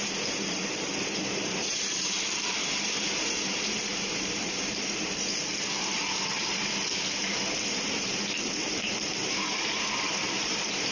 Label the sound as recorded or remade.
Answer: remade